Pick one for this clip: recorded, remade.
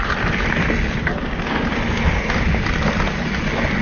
recorded